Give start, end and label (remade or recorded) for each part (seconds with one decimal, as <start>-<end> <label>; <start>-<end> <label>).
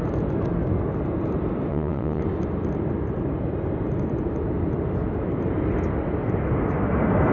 0.0-1.7 recorded; 1.7-2.2 remade; 2.2-7.3 recorded